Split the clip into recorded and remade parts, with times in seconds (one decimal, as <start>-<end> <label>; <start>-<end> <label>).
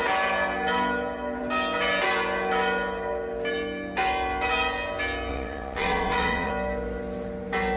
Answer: 0.0-5.3 recorded; 5.3-6.5 remade; 6.5-7.8 recorded